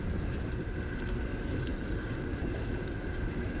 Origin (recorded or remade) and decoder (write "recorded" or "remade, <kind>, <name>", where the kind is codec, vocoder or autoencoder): recorded